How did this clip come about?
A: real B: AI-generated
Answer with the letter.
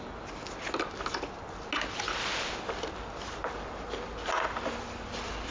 A